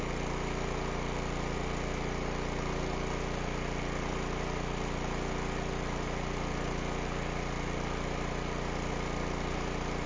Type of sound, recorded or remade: recorded